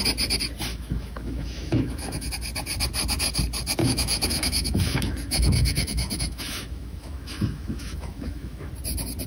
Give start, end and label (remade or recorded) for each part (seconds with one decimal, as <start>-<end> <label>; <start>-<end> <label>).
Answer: 0.0-0.7 recorded; 0.7-2.3 remade; 2.3-3.8 recorded; 3.8-8.7 remade; 8.7-9.3 recorded